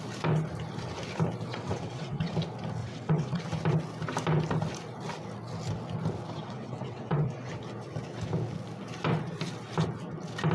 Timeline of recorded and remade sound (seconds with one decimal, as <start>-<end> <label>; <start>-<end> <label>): 0.0-1.5 recorded; 1.5-2.3 remade; 2.3-2.8 recorded; 2.8-3.4 remade; 3.4-6.4 recorded; 6.4-7.5 remade; 7.5-10.5 recorded